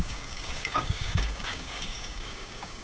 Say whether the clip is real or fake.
fake